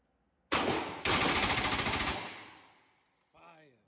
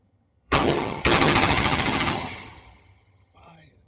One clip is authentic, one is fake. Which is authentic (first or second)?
first